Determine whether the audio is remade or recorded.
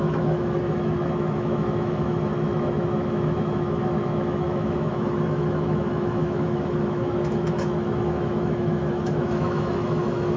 remade